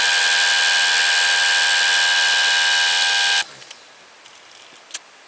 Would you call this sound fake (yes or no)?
no